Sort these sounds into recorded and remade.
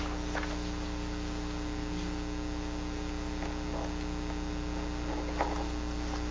recorded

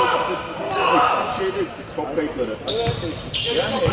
recorded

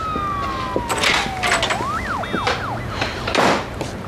recorded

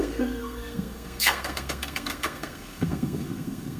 remade